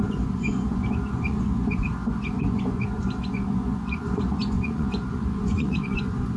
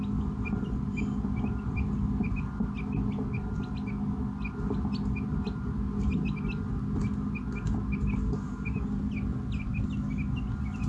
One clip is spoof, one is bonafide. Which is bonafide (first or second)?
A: second